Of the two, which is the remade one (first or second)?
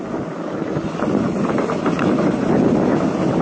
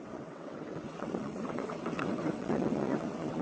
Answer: second